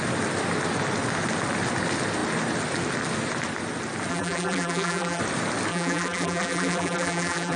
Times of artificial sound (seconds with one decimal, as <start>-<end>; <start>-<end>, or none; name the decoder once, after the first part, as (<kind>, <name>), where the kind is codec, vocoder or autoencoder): 4.1-5.2 (vocoder, BigVGAN v2); 5.7-7.6